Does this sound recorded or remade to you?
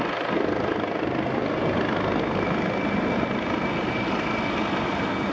recorded